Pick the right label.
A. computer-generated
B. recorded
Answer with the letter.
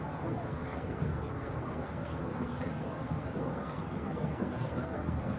A